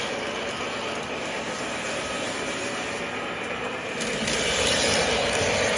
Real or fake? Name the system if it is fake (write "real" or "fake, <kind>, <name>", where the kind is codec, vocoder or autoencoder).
real